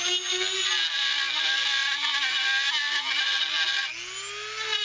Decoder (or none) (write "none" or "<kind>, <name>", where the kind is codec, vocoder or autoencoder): none